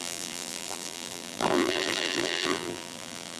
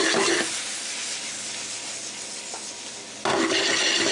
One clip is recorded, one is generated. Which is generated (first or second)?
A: first